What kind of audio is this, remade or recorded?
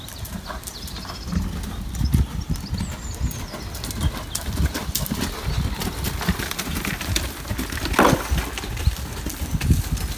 recorded